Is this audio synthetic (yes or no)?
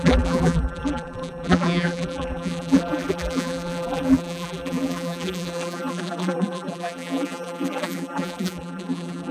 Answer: yes